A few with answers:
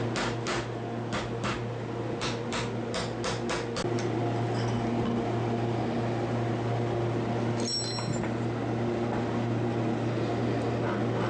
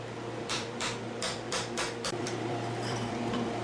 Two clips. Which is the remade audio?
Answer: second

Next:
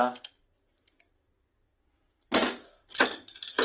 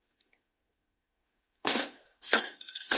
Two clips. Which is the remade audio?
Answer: second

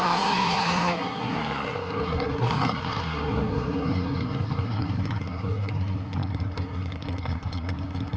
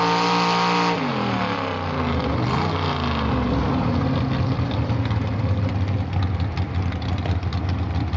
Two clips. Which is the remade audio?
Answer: first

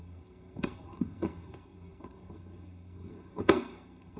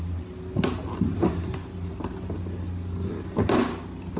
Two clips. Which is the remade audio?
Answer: first